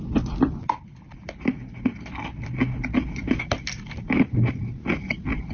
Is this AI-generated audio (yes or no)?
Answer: no